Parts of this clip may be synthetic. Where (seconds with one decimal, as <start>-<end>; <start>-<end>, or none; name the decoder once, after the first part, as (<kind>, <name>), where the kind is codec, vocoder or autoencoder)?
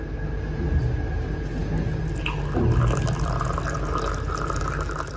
none